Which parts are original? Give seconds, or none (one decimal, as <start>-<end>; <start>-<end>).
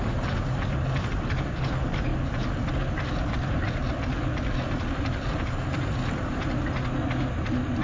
0.0-3.8; 6.4-7.8